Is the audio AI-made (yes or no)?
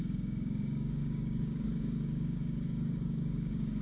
yes